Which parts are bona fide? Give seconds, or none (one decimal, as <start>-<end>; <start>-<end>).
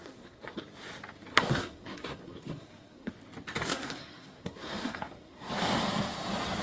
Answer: 0.6-1.3; 3.1-3.7; 5.5-6.6